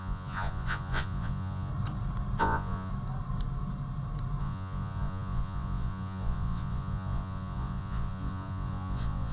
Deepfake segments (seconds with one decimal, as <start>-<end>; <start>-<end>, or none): 0.0-1.7; 2.4-2.9; 4.4-9.3